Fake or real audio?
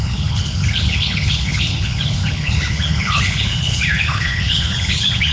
fake